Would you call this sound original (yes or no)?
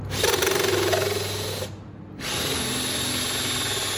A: yes